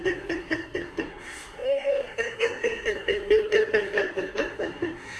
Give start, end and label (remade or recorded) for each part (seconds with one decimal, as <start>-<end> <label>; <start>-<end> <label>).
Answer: 0.0-5.2 remade